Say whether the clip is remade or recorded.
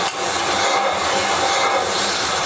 recorded